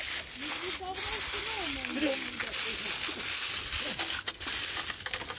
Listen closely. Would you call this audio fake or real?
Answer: real